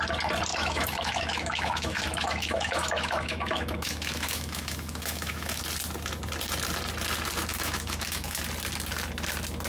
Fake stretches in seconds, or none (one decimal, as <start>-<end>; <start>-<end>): 0.5-5.6; 7.5-8.4